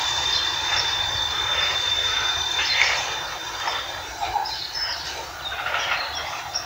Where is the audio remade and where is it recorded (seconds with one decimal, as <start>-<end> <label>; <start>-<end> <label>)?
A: 0.0-6.7 remade